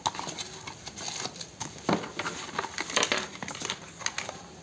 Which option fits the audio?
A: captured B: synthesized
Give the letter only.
A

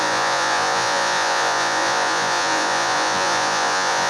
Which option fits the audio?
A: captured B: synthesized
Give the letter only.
B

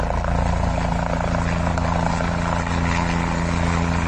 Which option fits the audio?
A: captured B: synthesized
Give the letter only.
A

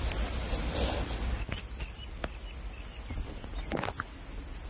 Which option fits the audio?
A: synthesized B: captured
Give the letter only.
B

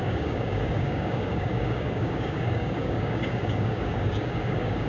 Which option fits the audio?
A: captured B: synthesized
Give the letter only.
B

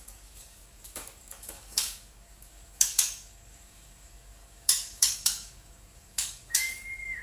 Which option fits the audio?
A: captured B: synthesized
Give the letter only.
B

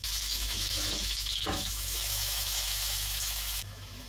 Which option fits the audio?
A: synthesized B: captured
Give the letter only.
A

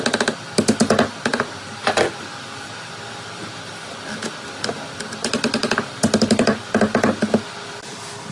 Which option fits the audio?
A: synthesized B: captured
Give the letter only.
B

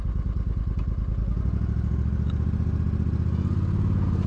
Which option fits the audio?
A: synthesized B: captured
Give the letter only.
B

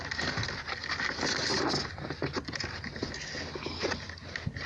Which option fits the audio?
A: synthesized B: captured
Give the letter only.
B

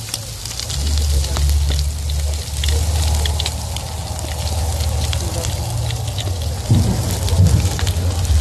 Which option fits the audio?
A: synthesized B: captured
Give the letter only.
B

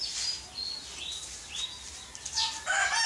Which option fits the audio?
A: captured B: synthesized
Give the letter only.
A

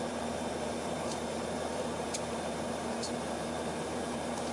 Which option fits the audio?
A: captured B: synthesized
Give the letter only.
B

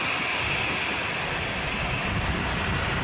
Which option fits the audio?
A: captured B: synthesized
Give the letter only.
A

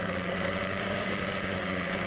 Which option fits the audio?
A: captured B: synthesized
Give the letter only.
B